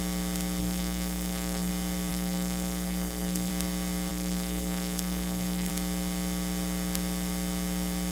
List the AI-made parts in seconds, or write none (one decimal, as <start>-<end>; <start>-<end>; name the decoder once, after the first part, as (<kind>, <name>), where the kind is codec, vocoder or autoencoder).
0.6-1.7 (codec, SNAC); 2.1-3.5; 4.1-5.7